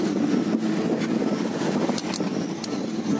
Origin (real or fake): real